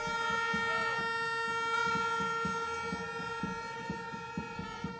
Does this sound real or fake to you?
real